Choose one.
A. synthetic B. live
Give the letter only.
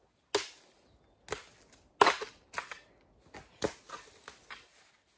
B